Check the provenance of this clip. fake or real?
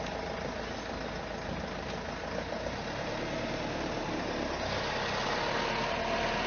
real